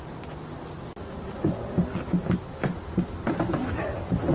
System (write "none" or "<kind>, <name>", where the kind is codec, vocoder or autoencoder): none